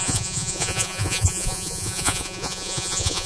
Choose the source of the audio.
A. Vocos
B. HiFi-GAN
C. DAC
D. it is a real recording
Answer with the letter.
A